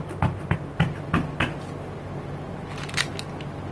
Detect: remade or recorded recorded